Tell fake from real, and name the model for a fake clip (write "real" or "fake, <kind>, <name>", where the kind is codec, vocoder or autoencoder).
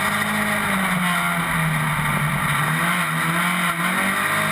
real